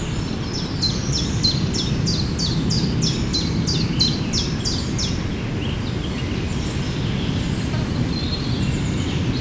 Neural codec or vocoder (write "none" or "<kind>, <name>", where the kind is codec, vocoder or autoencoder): none